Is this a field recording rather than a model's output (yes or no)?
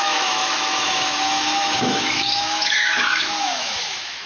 no